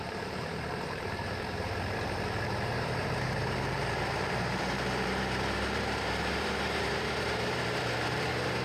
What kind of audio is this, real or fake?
fake